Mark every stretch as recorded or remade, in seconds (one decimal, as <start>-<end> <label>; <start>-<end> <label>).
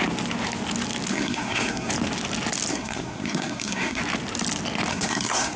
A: 0.0-1.1 recorded; 1.1-1.9 remade; 1.9-2.7 recorded; 2.7-4.0 remade; 4.0-4.9 recorded; 4.9-5.6 remade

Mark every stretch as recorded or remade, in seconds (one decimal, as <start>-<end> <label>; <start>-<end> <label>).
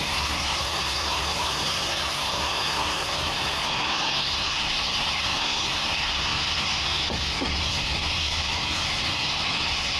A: 0.0-10.0 remade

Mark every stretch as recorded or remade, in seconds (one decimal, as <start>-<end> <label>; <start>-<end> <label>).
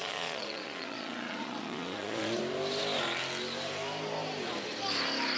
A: 0.0-2.4 remade; 2.4-5.4 recorded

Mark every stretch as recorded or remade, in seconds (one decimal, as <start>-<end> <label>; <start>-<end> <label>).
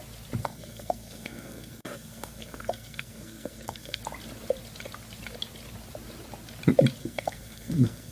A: 0.0-0.4 recorded; 0.4-4.0 remade; 4.0-7.0 recorded; 7.0-8.1 remade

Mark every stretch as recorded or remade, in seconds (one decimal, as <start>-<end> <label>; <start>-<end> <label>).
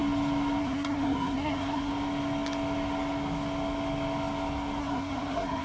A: 0.0-0.6 recorded; 0.6-1.9 remade; 1.9-4.8 recorded; 4.8-5.6 remade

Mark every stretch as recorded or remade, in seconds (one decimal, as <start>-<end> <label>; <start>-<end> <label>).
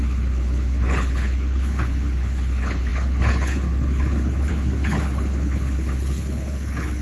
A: 0.0-7.0 remade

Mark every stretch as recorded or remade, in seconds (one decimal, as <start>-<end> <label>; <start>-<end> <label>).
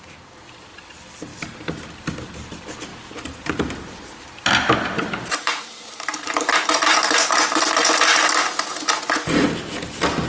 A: 0.0-1.3 recorded; 1.3-1.9 remade; 1.9-2.9 recorded; 2.9-7.7 remade; 7.7-10.3 recorded